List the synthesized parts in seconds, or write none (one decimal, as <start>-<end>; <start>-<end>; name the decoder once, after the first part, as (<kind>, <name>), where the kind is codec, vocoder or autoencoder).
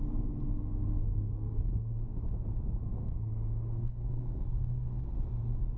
0.9-1.6 (codec, SNAC); 2.9-5.0